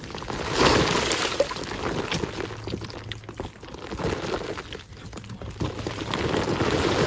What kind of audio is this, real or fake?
real